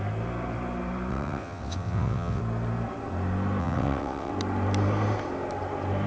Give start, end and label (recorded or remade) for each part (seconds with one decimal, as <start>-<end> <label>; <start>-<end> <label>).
0.0-1.1 recorded; 1.1-2.4 remade; 2.4-3.6 recorded; 3.6-4.3 remade; 4.3-6.1 recorded